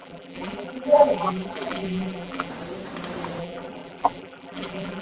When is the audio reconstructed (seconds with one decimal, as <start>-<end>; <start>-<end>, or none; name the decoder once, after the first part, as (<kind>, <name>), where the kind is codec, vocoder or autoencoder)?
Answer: 0.0-2.5 (vocoder, BigVGAN v2); 3.4-5.0